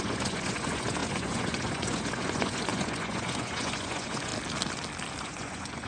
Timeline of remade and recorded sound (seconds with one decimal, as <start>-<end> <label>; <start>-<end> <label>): 0.0-4.3 remade; 4.3-5.2 recorded; 5.2-5.9 remade